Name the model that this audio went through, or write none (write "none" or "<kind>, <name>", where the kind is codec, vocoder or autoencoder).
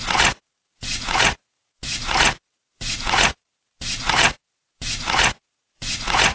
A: vocoder, Vocos